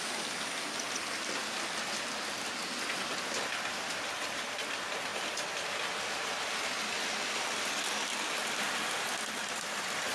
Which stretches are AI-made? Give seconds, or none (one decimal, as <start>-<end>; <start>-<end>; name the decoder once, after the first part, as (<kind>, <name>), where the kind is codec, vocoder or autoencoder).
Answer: none